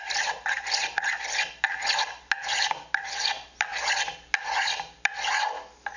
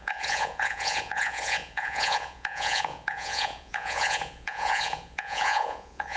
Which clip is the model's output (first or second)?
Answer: second